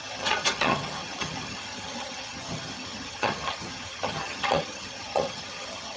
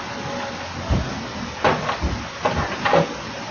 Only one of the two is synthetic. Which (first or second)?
first